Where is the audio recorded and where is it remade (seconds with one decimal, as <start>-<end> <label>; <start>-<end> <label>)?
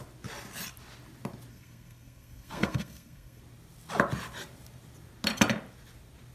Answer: 0.0-1.5 recorded; 1.5-3.4 remade; 3.4-6.3 recorded